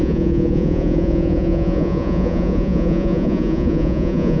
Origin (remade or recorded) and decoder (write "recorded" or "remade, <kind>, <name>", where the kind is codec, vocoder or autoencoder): remade, vocoder, Vocos